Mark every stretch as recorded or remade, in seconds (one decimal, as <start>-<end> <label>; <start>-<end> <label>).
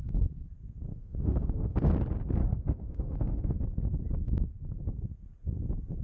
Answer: 0.0-0.9 recorded; 0.9-1.9 remade; 1.9-2.4 recorded; 2.4-3.6 remade; 3.6-6.0 recorded